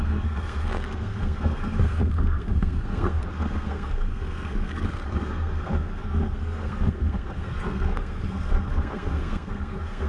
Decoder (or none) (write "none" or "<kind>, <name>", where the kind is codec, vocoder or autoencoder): codec, SNAC